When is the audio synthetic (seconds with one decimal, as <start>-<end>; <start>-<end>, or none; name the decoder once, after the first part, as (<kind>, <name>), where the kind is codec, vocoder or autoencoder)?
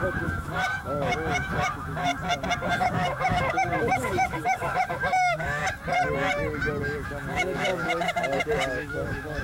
0.0-2.1 (autoencoder, DAC-VAE); 2.7-5.6; 6.8-9.4